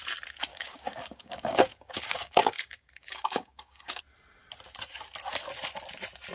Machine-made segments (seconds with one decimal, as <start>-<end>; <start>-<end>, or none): 0.5-4.0

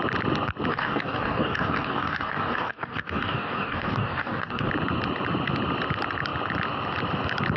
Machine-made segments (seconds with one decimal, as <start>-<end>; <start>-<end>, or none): 0.7-4.7

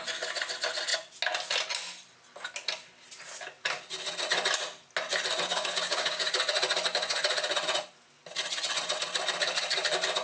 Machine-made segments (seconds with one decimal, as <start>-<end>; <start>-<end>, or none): 5.5-6.3